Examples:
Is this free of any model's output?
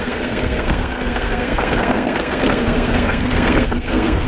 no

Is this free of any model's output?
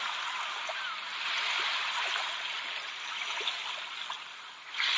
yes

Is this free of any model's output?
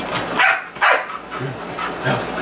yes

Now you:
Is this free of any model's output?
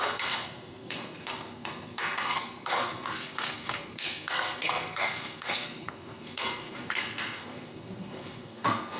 no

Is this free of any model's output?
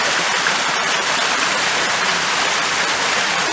no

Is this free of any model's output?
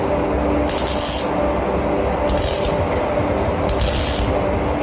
yes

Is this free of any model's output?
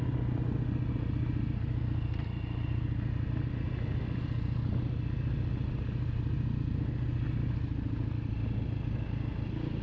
yes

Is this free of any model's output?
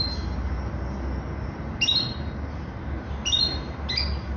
yes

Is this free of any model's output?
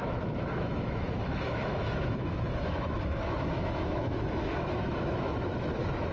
no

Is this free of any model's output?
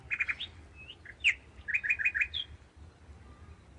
yes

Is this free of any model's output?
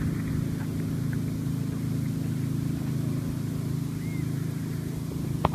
yes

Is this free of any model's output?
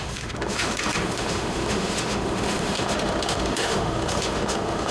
no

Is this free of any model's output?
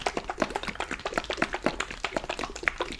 yes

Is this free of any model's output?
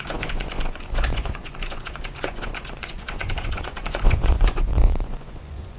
no